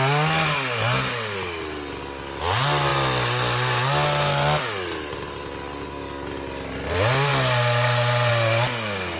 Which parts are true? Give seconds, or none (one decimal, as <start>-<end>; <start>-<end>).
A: 0.0-9.2